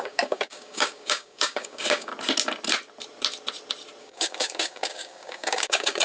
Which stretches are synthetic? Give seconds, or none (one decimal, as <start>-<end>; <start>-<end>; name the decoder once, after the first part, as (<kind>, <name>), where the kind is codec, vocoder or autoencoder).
0.0-2.1 (codec, DAC); 4.0-6.0